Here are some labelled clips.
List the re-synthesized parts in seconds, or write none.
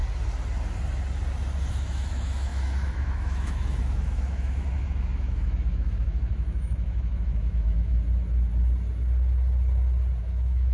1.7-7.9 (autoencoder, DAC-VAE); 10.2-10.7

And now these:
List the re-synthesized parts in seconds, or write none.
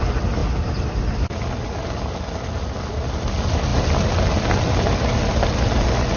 none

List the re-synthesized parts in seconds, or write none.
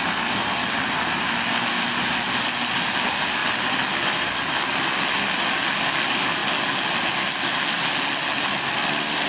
none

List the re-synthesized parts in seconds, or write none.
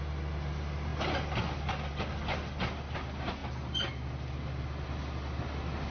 none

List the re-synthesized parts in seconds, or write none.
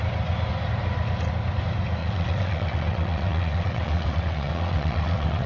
2.0-5.5 (vocoder, WaveNeXt)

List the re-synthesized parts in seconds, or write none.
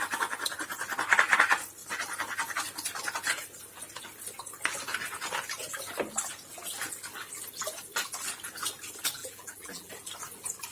9.2-9.9 (vocoder, BigVGAN v2)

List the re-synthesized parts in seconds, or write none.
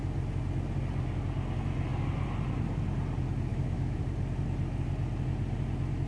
3.5-4.0 (autoencoder, DAC-VAE)